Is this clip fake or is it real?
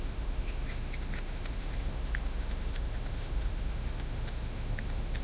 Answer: fake